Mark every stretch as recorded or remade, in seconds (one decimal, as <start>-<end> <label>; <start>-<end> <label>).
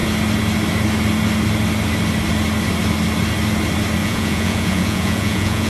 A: 0.0-4.0 recorded; 4.0-5.7 remade